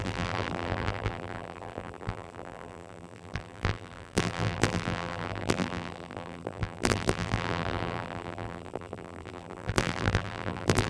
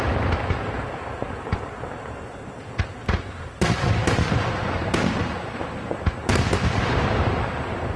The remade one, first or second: first